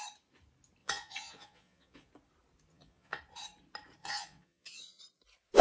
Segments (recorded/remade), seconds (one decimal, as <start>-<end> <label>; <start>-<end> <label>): 0.0-0.8 recorded; 0.8-2.1 remade; 2.1-2.7 recorded; 2.7-3.2 remade; 3.2-4.0 recorded; 4.0-5.0 remade; 5.0-5.6 recorded